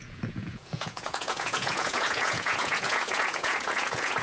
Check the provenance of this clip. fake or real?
fake